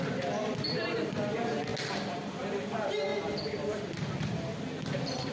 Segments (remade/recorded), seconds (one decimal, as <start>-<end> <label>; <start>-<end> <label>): 0.0-5.3 recorded